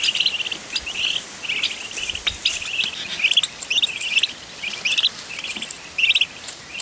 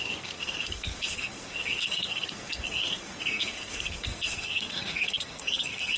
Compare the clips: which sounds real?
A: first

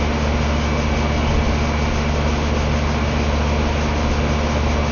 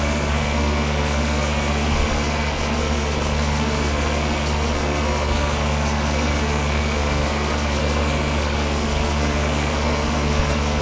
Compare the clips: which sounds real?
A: first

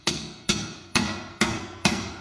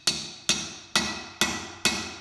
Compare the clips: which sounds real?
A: second